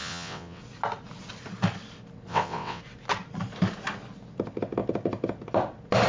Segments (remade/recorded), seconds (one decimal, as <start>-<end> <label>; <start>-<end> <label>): 0.0-0.6 remade; 0.6-2.3 recorded; 2.3-2.8 remade; 2.8-6.1 recorded